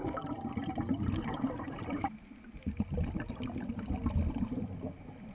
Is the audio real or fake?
real